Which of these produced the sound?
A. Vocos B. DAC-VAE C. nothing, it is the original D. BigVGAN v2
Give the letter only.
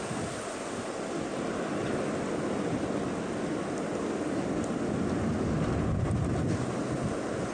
C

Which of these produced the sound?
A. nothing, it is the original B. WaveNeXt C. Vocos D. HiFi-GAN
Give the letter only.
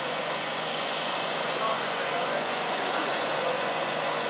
C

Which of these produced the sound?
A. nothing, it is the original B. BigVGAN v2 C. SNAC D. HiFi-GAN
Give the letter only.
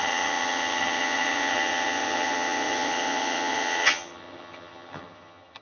D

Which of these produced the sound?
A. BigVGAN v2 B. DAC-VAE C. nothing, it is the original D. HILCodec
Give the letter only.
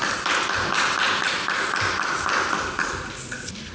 C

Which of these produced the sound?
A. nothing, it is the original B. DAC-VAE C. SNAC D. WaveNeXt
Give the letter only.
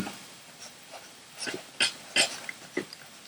A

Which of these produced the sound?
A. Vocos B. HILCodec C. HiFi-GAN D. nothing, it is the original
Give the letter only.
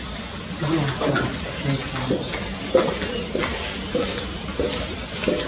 D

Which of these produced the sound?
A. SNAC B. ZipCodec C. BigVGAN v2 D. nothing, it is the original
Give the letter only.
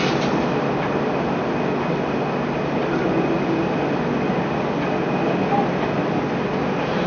D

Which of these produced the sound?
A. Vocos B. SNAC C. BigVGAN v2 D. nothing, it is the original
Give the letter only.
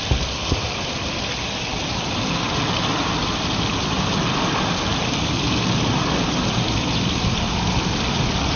D